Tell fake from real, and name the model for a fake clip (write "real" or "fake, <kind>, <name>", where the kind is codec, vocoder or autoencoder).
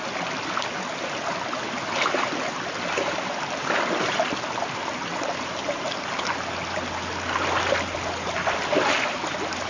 real